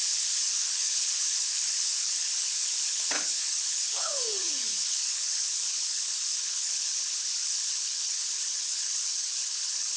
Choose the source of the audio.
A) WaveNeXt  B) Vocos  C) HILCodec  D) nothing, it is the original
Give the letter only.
C